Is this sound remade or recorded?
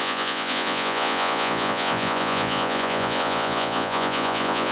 remade